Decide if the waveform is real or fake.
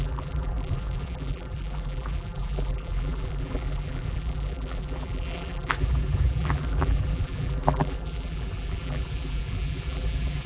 fake